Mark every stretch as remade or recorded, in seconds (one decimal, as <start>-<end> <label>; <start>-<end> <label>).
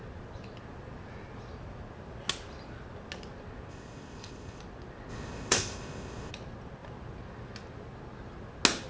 0.0-3.7 recorded; 3.7-4.6 remade; 4.6-5.1 recorded; 5.1-6.3 remade; 6.3-8.9 recorded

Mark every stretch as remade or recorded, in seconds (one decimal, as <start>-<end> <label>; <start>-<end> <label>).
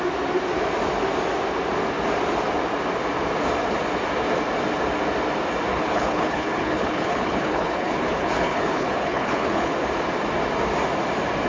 0.0-5.7 recorded; 5.7-9.7 remade; 9.7-11.5 recorded